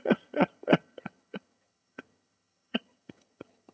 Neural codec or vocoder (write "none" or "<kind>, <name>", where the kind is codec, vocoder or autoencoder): vocoder, HiFi-GAN